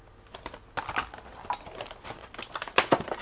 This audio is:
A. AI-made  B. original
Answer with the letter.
B